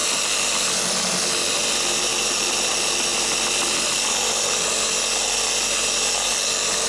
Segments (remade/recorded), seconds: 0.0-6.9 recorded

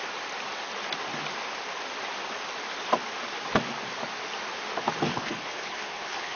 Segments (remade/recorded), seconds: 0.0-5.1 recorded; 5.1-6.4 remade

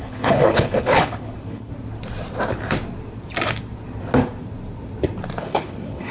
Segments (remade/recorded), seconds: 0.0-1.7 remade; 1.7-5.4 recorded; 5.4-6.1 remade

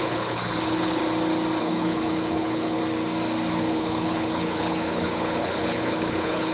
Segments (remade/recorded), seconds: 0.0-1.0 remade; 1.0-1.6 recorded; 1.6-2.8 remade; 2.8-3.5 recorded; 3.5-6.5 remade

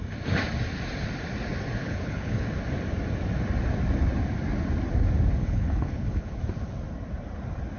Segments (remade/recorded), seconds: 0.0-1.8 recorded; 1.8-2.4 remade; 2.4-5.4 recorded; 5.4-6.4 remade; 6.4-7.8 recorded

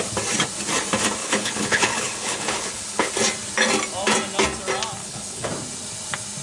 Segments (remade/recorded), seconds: 0.0-1.2 recorded; 1.2-3.1 remade; 3.1-5.0 recorded; 5.0-5.5 remade; 5.5-6.4 recorded

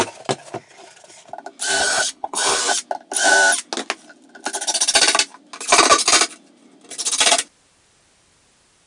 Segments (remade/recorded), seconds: 0.0-1.8 recorded; 1.8-2.6 remade; 2.6-8.9 recorded

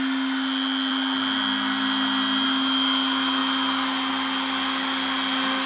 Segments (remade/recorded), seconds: 0.0-5.7 recorded